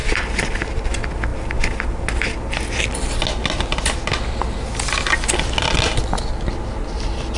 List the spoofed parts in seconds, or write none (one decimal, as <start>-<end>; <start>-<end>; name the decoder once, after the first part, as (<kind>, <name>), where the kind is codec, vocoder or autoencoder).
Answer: 0.0-0.9 (vocoder, BigVGAN v2)